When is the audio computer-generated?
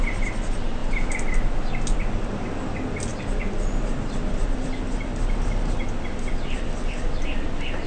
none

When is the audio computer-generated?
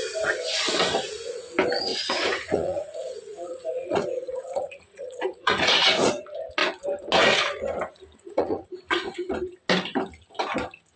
1.9-6.1 (vocoder, Vocos); 8.2-9.3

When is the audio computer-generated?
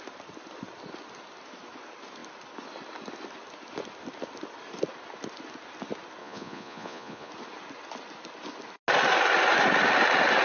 6.2-7.3 (vocoder, Vocos)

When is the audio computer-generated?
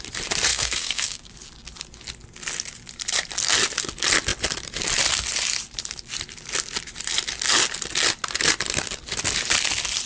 0.5-1.3 (codec, SNAC)